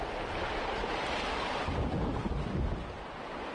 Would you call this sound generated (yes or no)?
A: no